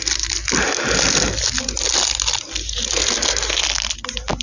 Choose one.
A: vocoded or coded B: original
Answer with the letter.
B